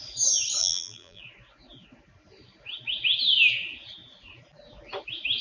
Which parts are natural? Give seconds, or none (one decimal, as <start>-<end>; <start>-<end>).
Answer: 0.0-0.6; 1.2-5.4